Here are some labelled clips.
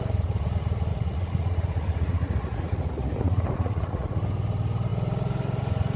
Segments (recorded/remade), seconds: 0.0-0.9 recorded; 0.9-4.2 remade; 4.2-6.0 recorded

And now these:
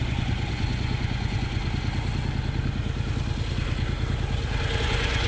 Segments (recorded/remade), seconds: 0.0-1.6 remade; 1.6-4.8 recorded; 4.8-5.3 remade

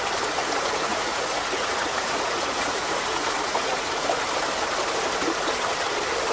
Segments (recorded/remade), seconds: 0.0-0.4 recorded; 0.4-4.2 remade; 4.2-6.3 recorded

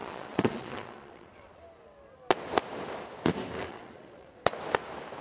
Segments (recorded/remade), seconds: 0.0-1.6 remade; 1.6-3.7 recorded; 3.7-4.5 remade; 4.5-5.2 recorded

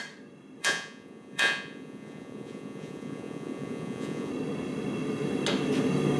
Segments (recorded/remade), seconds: 0.0-0.6 recorded; 0.6-4.3 remade; 4.3-6.2 recorded

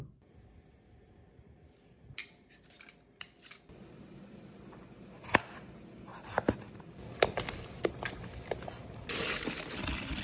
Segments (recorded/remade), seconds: 0.0-10.2 recorded